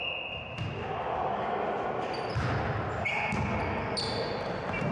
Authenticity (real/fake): real